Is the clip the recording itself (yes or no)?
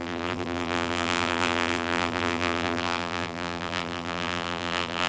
no